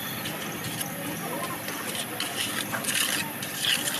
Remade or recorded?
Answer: recorded